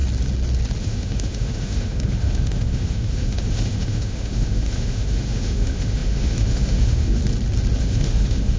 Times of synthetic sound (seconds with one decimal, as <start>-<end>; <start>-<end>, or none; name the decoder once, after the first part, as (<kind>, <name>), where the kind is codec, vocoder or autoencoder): 0.8-7.2 (autoencoder, DAC-VAE); 7.8-8.6